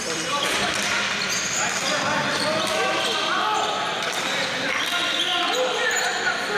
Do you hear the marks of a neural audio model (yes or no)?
no